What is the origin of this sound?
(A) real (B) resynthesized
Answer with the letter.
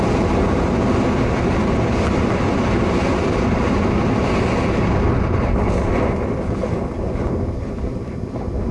A